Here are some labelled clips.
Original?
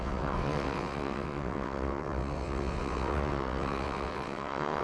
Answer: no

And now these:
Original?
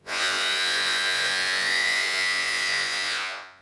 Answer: no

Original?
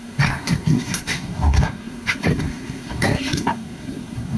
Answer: no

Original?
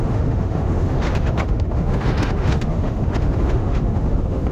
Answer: no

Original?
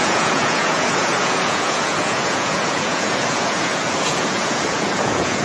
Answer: no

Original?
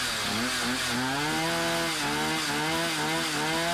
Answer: yes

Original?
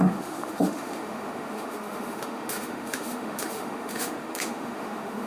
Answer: no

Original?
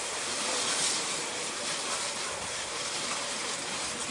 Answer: yes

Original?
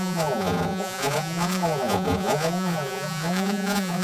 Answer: no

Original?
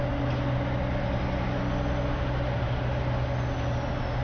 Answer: yes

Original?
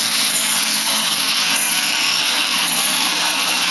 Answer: no